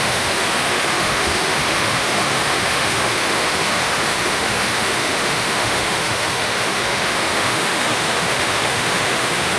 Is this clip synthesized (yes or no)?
yes